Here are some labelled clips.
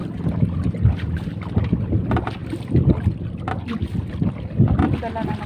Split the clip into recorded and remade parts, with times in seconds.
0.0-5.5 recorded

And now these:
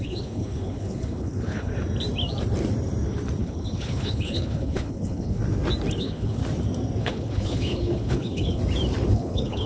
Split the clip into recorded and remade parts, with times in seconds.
0.0-1.7 remade; 1.7-3.4 recorded; 3.4-5.4 remade; 5.4-6.0 recorded; 6.0-6.4 remade; 6.4-7.0 recorded; 7.0-8.6 remade; 8.6-9.1 recorded; 9.1-9.7 remade

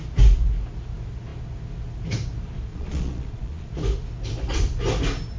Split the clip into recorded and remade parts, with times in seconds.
0.0-2.7 recorded; 2.7-3.7 remade; 3.7-5.4 recorded

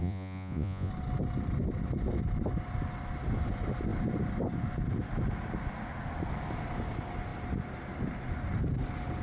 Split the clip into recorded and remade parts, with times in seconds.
0.0-0.9 remade; 0.9-9.2 recorded

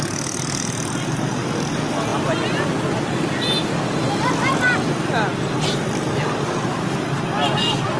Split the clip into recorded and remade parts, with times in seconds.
0.0-8.0 recorded

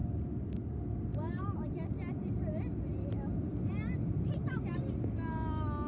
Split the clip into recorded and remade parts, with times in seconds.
0.0-5.9 recorded

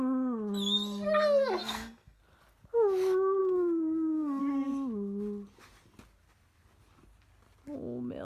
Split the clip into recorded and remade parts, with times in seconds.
0.0-1.6 recorded; 1.6-2.2 remade; 2.2-3.4 recorded; 3.4-4.4 remade; 4.4-8.2 recorded

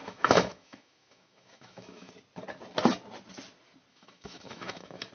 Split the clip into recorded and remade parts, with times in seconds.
0.0-2.1 remade; 2.1-3.9 recorded; 3.9-5.1 remade